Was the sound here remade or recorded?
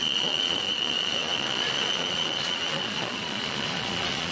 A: remade